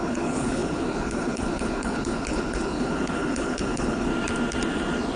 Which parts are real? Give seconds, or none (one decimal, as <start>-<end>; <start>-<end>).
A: 4.1-5.2